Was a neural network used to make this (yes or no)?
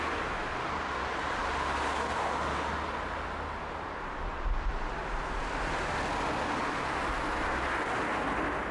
no